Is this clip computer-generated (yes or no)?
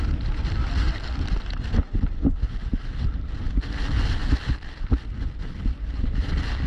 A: no